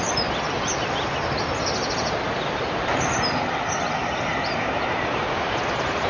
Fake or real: real